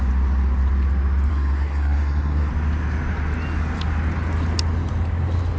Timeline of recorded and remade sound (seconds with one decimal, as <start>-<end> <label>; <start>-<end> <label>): 0.0-1.3 recorded; 1.3-2.5 remade; 2.5-5.6 recorded